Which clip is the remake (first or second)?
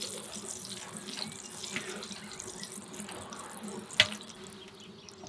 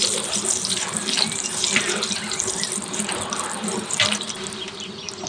second